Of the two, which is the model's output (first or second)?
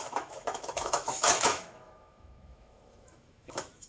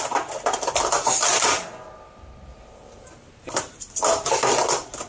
first